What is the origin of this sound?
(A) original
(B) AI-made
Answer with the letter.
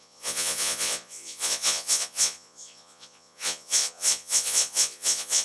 B